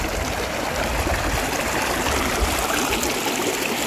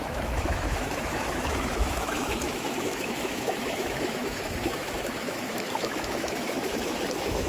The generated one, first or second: second